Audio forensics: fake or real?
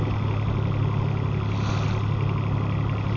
real